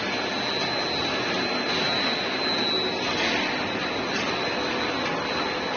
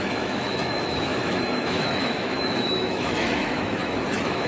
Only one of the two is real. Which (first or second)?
first